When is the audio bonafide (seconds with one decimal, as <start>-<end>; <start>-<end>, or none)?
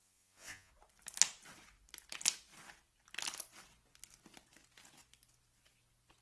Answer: 0.7-6.2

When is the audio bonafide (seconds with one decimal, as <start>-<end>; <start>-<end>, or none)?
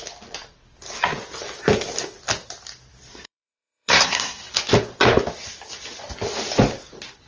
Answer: 0.0-3.1; 4.4-7.3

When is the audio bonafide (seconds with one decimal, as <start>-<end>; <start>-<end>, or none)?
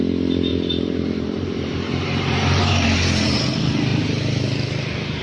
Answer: 0.0-0.5; 3.4-5.2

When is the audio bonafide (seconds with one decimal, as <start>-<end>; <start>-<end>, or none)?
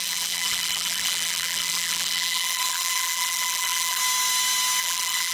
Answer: 4.0-4.8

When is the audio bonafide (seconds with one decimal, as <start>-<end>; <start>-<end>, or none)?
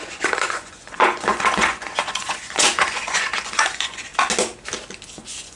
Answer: 4.1-5.1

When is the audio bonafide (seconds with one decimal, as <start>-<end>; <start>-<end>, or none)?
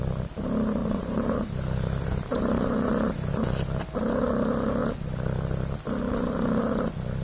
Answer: 0.0-0.8; 3.3-7.2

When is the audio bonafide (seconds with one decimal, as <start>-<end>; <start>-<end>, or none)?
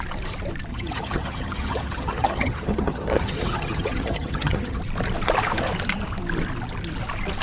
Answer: 0.0-0.7; 4.8-7.4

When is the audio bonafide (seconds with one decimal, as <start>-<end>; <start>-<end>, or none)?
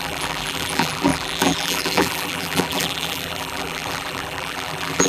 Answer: none